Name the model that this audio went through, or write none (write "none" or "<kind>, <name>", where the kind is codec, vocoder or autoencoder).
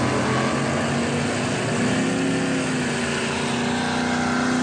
none